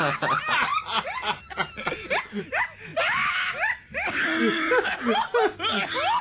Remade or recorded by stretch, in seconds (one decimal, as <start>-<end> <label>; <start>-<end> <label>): 0.0-6.2 recorded